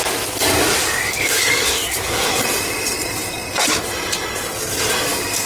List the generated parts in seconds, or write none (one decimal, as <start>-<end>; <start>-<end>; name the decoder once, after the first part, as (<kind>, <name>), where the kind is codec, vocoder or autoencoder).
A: 0.8-2.3 (codec, DAC)

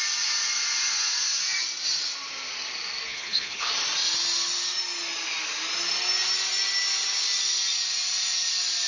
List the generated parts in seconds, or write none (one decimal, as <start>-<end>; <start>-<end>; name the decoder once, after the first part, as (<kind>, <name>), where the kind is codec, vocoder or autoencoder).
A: 3.1-3.7 (codec, HILCodec)

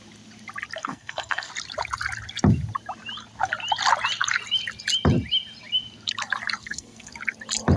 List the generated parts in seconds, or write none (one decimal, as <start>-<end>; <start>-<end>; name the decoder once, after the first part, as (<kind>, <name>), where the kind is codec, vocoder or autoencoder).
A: 0.8-1.5 (codec, SNAC); 6.6-7.1

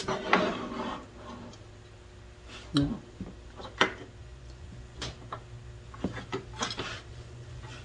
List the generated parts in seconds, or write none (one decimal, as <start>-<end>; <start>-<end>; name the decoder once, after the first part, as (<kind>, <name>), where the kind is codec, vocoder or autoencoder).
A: 4.2-5.1 (vocoder, Vocos); 7.1-7.8

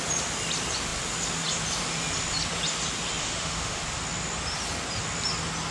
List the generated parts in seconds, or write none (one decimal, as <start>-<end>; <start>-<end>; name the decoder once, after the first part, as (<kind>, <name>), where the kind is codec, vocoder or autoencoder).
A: 3.2-3.8 (autoencoder, DAC-VAE)

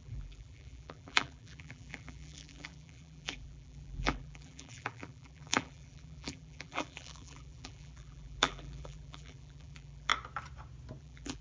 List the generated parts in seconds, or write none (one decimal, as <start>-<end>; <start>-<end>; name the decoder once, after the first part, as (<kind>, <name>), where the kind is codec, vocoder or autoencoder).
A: 0.0-10.1 (vocoder, BigVGAN v2); 11.0-11.4

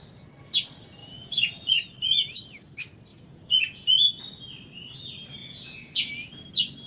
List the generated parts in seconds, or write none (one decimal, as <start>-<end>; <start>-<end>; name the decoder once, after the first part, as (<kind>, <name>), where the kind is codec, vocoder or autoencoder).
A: 1.0-1.7 (vocoder, Vocos); 3.1-4.2; 5.4-6.1

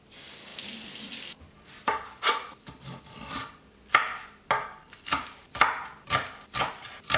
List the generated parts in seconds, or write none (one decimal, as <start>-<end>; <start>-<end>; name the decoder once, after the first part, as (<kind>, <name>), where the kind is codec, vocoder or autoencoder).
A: 4.6-5.2 (codec, DAC)